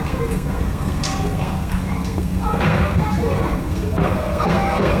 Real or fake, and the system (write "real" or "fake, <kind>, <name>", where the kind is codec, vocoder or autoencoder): fake, codec, SNAC